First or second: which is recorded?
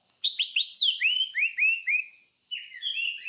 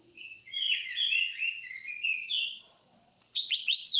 first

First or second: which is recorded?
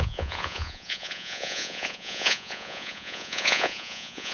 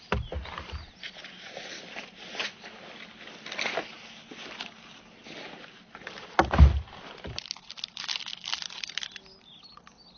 second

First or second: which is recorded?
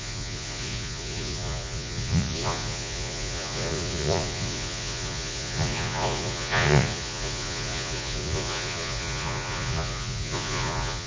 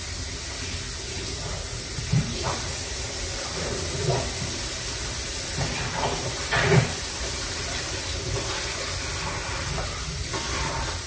second